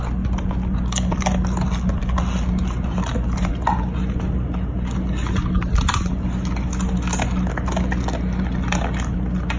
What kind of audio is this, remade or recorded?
recorded